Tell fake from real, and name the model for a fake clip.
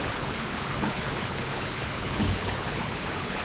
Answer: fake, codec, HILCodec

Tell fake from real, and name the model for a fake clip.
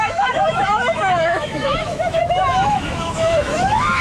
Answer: fake, autoencoder, DAC-VAE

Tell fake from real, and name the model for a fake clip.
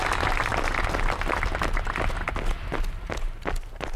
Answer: real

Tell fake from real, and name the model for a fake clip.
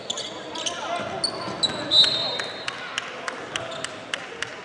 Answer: real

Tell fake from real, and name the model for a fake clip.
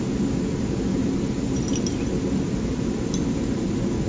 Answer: real